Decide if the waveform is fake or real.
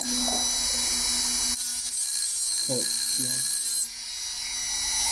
real